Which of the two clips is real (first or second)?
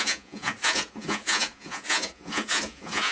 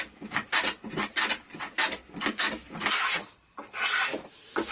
second